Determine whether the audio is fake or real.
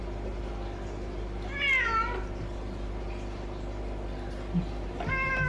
real